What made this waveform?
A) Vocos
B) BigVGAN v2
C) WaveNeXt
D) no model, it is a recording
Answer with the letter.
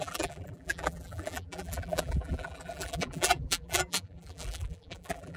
B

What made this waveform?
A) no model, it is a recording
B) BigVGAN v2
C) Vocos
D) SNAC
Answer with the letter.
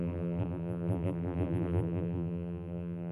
B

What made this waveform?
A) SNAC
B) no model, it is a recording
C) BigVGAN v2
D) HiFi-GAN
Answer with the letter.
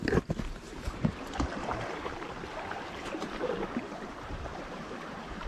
C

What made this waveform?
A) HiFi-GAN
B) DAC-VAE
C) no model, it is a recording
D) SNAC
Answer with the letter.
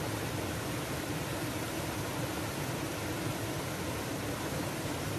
C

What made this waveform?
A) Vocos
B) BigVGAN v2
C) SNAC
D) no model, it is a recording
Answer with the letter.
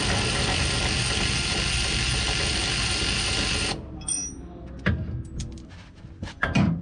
D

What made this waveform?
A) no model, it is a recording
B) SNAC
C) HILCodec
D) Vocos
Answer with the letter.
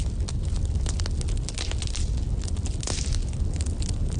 A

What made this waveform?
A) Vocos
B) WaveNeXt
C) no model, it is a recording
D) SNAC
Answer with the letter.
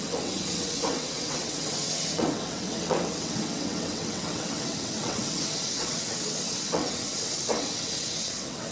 B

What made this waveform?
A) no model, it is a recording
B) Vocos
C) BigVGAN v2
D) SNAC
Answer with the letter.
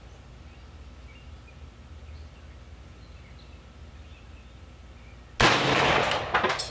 A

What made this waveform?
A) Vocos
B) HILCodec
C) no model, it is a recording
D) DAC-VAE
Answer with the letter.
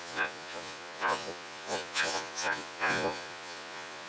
A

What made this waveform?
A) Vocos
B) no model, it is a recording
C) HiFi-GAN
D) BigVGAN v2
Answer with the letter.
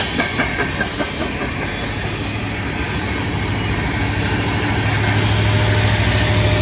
B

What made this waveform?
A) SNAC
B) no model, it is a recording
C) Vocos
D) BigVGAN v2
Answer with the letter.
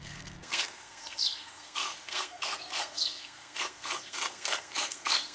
A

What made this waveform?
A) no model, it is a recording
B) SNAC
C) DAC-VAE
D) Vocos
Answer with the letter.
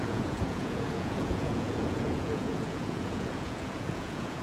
D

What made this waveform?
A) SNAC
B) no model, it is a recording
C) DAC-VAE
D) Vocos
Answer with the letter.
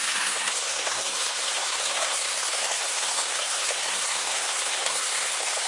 A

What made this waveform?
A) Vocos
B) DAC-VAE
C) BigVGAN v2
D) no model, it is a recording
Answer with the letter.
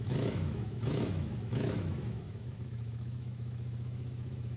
B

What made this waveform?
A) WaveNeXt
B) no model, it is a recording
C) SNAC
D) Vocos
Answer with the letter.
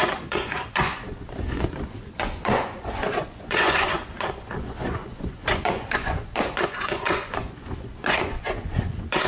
D